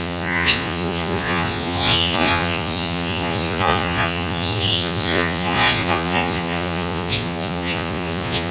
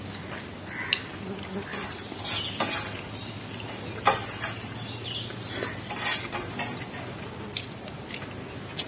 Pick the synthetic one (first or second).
first